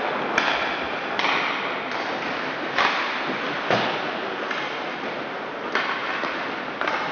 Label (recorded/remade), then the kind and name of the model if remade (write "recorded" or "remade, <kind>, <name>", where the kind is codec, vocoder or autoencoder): recorded